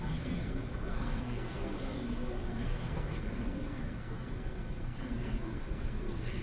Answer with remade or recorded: remade